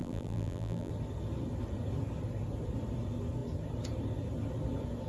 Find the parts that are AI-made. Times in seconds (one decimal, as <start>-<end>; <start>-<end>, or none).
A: 0.0-0.9